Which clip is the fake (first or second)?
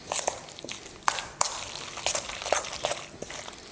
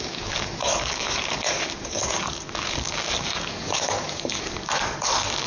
second